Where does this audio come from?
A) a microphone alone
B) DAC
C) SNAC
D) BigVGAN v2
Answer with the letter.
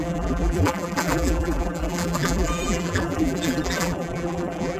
D